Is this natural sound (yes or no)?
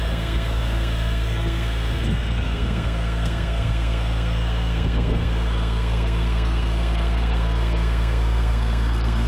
no